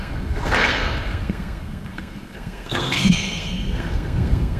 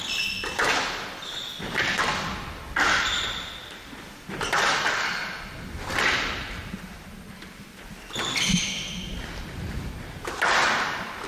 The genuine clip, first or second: second